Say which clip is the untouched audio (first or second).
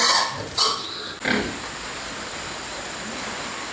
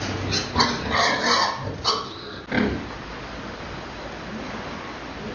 second